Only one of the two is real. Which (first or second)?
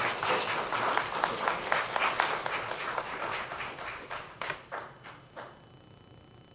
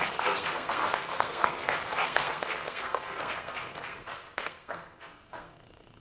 first